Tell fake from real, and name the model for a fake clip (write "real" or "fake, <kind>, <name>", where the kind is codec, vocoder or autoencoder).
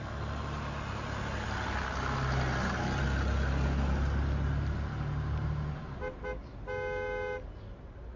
real